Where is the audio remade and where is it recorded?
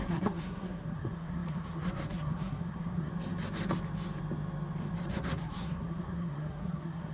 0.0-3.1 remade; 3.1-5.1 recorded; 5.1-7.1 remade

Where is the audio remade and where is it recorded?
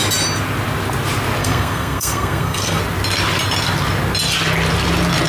0.0-1.4 recorded; 1.4-2.8 remade; 2.8-5.3 recorded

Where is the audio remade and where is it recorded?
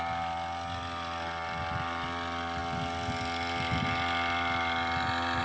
0.0-5.4 recorded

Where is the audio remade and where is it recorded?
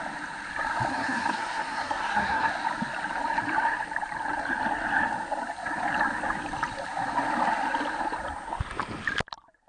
0.0-0.9 recorded; 0.9-2.5 remade; 2.5-9.7 recorded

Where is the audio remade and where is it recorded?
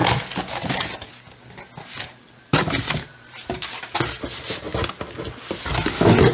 0.0-6.3 recorded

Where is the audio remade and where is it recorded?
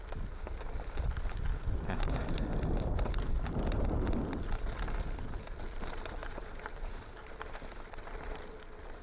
0.0-6.2 recorded; 6.2-7.6 remade; 7.6-9.0 recorded